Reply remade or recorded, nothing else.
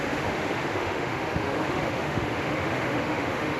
remade